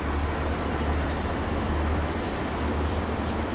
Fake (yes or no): yes